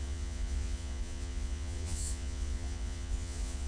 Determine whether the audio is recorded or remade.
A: remade